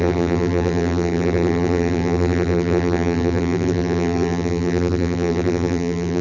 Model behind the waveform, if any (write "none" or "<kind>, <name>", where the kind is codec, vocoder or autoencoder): vocoder, BigVGAN v2